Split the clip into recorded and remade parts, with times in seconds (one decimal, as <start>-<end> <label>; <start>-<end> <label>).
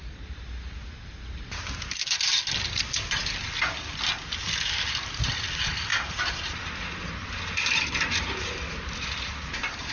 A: 0.0-5.9 recorded; 5.9-9.9 remade